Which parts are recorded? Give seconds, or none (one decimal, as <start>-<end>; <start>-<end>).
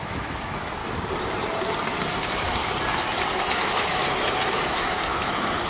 0.8-2.2; 2.6-3.4; 4.0-4.5